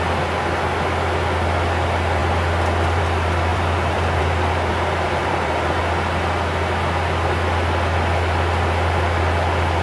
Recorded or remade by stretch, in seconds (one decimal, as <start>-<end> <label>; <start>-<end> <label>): 0.0-3.5 recorded; 3.5-4.2 remade; 4.2-4.7 recorded; 4.7-5.8 remade; 5.8-9.8 recorded